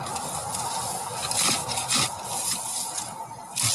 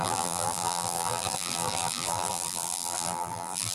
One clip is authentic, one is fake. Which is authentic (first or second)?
first